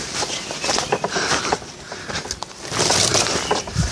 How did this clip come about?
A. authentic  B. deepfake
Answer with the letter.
A